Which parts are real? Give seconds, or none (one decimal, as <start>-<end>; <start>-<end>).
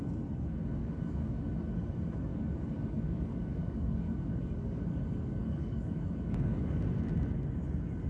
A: 0.0-0.8; 1.4-2.3; 6.8-8.1